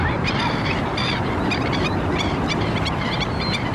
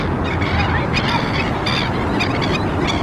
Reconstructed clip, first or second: first